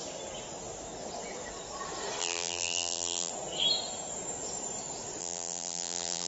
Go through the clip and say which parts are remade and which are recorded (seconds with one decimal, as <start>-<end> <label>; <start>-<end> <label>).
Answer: 0.0-2.2 recorded; 2.2-3.3 remade; 3.3-5.2 recorded; 5.2-6.3 remade